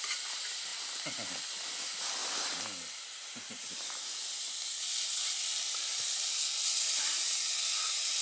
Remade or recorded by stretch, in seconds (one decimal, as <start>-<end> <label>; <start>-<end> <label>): 0.0-8.2 recorded